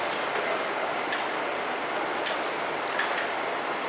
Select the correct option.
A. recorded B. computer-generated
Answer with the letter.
A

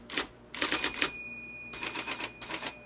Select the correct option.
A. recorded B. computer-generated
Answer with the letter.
A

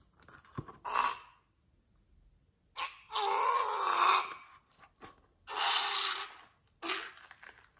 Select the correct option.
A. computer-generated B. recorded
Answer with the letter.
B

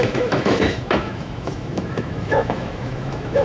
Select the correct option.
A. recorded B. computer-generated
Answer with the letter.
B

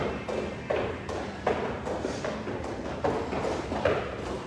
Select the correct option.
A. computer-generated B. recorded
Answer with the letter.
B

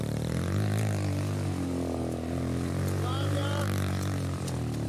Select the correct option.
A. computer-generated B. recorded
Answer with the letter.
A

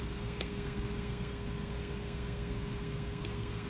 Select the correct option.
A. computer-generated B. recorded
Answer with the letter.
A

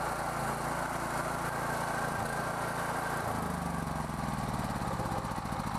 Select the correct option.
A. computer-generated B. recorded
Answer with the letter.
B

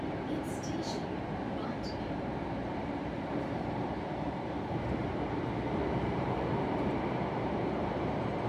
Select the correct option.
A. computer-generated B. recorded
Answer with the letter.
A